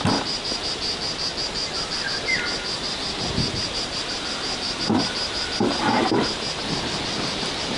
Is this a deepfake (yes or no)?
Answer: no